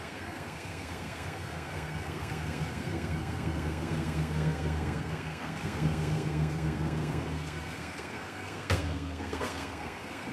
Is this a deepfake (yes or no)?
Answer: yes